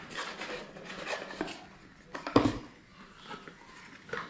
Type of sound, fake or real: real